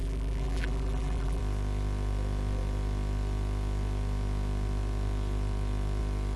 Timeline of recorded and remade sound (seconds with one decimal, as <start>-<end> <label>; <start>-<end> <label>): 0.0-1.4 remade; 1.4-6.4 recorded